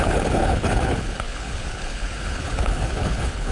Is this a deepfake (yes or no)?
yes